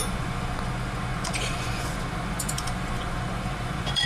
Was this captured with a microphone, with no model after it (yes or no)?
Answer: no